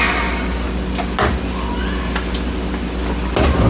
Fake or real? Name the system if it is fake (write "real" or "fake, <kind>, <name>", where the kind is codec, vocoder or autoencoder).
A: real